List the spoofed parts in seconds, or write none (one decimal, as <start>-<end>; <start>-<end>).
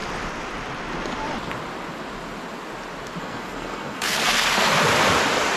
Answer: 3.2-4.7